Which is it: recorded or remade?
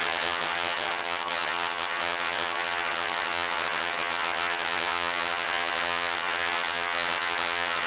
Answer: remade